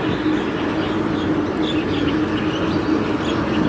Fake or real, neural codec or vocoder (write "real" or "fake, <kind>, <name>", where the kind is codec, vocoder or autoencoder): real